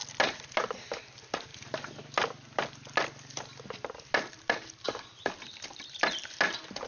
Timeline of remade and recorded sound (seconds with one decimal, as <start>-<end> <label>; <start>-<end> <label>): 0.0-6.9 recorded